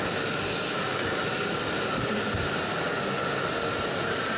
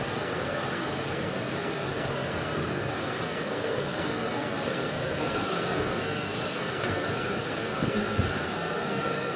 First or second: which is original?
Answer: first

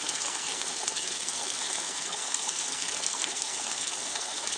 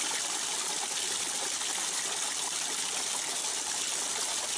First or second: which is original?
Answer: second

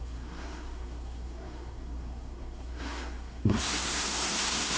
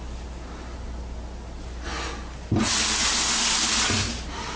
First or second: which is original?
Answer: second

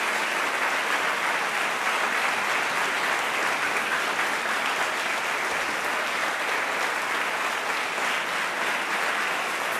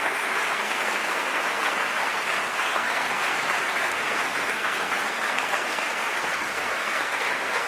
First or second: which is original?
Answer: first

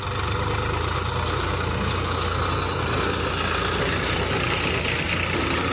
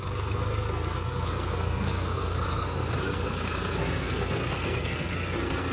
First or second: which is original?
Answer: first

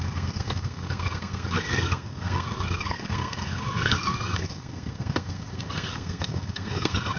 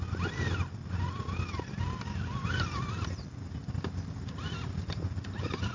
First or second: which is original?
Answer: second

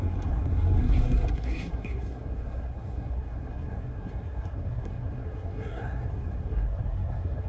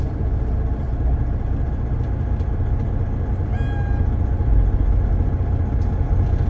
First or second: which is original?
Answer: second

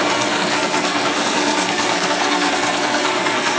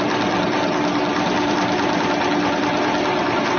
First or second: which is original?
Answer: second